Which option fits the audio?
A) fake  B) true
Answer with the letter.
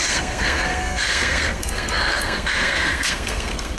A